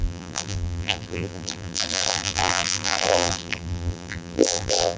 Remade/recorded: remade